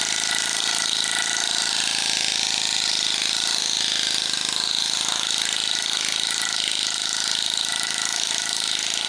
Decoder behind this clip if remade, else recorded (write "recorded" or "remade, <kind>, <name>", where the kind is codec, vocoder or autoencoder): recorded